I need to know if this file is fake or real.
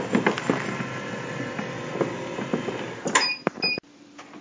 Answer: real